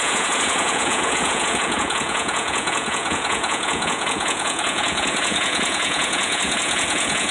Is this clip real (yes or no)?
no